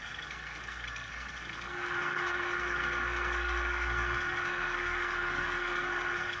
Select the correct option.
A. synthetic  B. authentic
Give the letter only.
A